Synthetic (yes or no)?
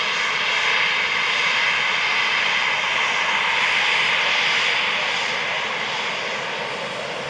no